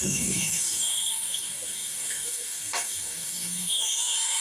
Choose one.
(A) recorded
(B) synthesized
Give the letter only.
B